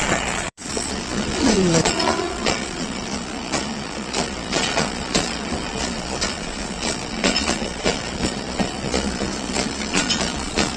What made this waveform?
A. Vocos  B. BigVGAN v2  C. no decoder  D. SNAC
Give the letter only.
A